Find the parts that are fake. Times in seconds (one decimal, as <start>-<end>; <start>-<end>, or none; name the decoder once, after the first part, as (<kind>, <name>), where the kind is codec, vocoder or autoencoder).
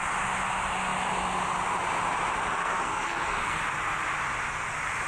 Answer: 2.6-3.6 (codec, SNAC)